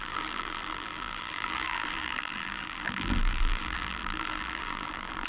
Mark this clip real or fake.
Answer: fake